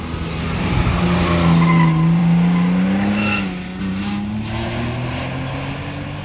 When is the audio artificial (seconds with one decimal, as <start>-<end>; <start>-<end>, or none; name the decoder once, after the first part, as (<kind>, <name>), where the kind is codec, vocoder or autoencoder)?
none